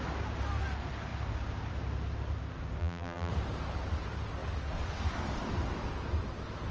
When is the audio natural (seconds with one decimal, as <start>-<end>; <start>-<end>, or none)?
0.0-2.8; 3.3-6.7